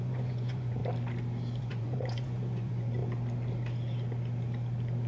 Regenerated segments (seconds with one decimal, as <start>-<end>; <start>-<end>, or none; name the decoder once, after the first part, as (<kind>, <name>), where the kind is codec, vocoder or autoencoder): 0.0-0.8 (vocoder, Vocos); 1.6-3.0